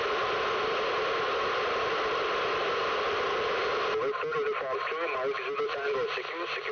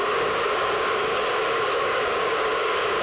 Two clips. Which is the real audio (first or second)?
first